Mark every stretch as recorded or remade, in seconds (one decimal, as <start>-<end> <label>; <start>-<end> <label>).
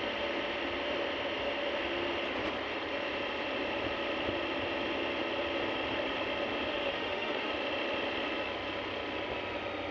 0.0-6.7 recorded; 6.7-7.5 remade; 7.5-9.9 recorded